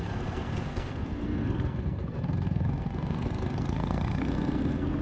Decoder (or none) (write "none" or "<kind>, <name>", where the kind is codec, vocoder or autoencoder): codec, SNAC